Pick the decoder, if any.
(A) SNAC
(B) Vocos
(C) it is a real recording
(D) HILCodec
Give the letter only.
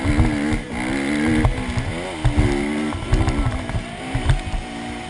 C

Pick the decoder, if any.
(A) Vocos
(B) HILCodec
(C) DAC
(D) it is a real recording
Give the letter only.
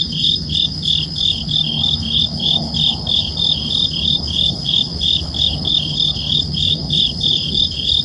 B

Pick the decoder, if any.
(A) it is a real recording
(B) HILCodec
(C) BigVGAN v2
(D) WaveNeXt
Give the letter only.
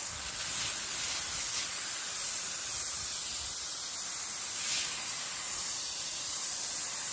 A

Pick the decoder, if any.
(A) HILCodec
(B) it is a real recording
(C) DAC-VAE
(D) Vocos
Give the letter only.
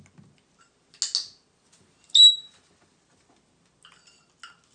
B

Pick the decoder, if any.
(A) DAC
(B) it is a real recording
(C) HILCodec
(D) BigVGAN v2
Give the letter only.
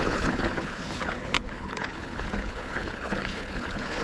C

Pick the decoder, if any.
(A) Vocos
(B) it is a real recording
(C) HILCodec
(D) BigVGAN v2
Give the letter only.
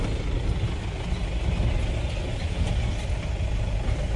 B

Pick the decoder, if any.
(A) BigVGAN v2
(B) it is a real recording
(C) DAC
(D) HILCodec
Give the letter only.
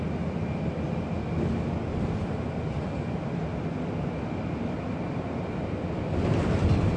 B